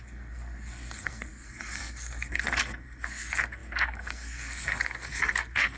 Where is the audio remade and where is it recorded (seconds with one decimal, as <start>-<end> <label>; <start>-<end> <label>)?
0.0-5.8 remade